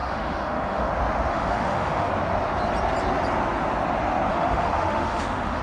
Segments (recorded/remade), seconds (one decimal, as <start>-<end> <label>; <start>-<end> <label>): 0.0-0.9 remade; 0.9-1.3 recorded; 1.3-2.1 remade; 2.1-4.3 recorded; 4.3-5.6 remade